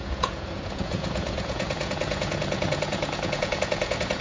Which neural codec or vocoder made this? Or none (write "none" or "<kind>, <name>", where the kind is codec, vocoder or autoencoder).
vocoder, Vocos